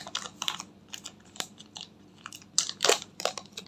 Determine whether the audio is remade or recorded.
recorded